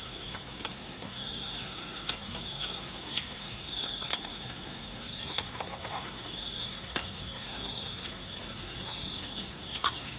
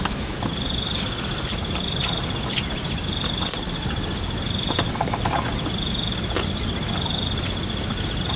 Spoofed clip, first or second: first